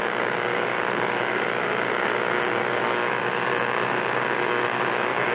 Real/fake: fake